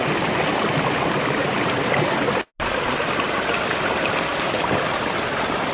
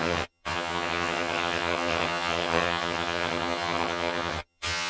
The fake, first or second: second